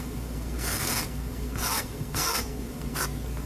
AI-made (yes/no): yes